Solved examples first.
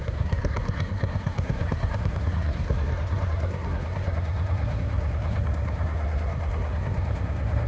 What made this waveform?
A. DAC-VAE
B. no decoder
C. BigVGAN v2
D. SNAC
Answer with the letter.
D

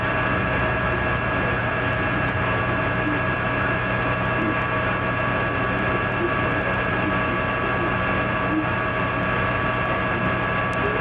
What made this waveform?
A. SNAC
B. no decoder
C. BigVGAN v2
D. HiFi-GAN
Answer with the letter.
B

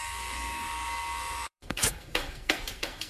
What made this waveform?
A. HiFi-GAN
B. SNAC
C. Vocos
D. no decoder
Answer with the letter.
B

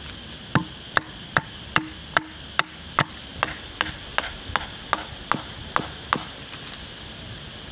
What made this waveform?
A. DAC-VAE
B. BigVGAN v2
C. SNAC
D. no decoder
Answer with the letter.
D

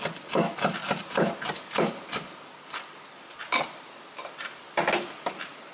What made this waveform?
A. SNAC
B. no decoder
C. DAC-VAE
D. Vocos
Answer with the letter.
B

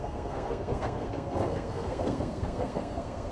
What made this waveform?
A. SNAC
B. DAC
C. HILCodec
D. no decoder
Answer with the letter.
A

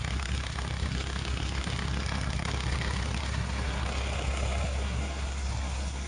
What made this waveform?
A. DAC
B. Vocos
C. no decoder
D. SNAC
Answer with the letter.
D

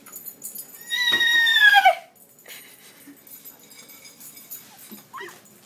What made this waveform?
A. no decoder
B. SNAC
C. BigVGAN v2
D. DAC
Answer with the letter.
A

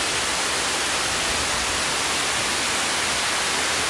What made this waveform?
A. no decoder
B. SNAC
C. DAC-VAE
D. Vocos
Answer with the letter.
A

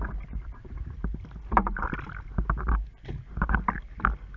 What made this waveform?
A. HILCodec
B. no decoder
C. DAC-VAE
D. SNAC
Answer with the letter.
B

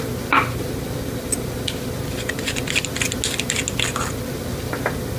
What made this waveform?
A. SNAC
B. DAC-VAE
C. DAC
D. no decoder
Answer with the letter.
D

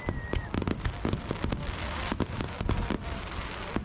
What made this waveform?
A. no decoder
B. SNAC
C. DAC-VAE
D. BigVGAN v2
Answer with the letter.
A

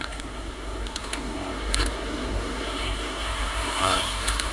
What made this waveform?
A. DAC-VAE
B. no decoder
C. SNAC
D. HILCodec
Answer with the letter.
C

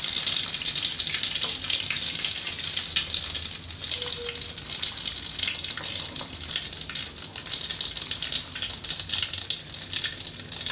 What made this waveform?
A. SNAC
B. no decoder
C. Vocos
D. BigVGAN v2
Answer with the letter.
B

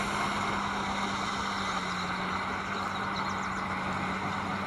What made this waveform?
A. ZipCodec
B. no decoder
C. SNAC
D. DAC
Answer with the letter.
B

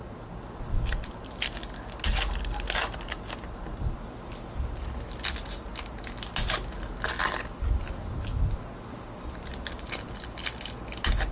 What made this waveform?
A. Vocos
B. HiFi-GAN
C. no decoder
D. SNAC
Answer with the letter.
C